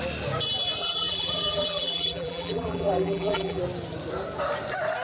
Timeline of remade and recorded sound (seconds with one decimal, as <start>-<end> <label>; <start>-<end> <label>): 0.0-0.8 recorded; 0.8-3.6 remade; 3.6-5.0 recorded